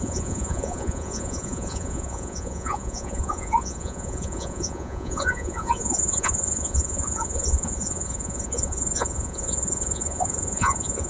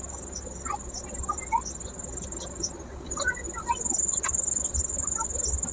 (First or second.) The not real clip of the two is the first